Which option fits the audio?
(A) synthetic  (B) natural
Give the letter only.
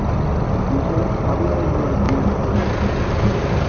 B